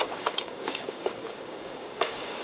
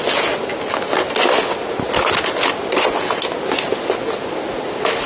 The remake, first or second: first